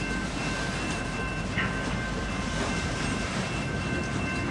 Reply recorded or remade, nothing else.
remade